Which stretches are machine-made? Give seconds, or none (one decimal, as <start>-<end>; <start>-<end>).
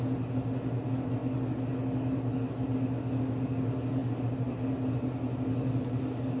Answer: 4.0-5.1